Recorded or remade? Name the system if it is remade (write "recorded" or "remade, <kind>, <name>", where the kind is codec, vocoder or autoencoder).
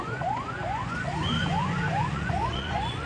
remade, vocoder, Vocos